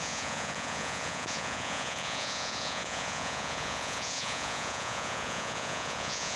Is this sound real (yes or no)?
no